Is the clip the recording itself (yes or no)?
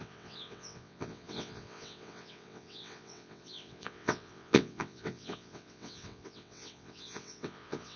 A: no